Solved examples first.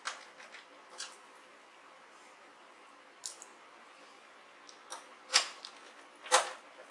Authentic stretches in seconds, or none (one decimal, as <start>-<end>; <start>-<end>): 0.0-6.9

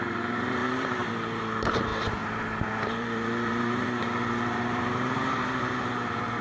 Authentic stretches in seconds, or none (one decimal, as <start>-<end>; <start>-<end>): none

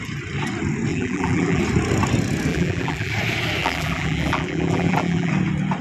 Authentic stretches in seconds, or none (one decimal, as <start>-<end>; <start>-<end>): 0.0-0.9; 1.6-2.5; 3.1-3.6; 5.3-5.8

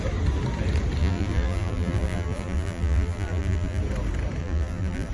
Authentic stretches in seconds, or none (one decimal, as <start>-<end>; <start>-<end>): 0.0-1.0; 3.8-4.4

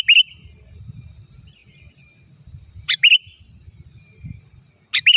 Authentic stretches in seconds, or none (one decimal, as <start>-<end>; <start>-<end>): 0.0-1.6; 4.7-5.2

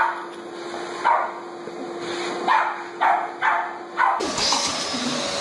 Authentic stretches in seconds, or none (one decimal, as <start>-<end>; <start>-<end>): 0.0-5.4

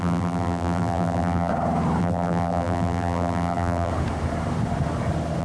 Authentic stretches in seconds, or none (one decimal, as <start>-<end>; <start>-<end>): 1.5-2.0; 3.9-5.4